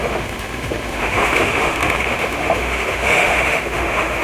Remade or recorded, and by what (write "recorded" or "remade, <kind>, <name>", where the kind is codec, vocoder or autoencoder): remade, autoencoder, DAC-VAE